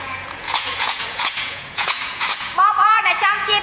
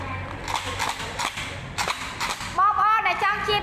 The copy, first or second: first